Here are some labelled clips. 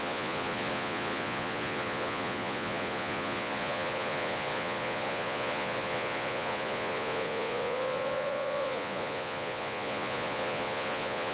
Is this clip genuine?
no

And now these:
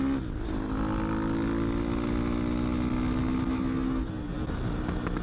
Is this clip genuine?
yes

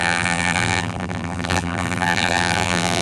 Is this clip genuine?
no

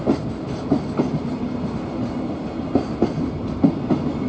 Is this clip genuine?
yes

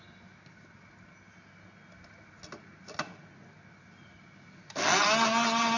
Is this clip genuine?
yes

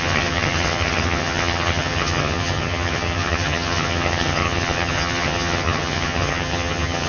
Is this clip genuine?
no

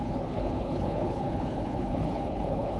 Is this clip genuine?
no